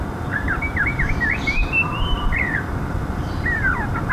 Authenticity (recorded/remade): remade